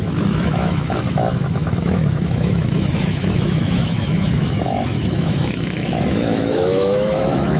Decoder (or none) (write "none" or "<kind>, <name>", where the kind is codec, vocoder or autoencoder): autoencoder, DAC-VAE